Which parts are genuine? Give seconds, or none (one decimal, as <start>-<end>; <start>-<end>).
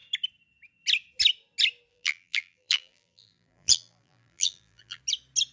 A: 0.0-1.9; 5.0-5.5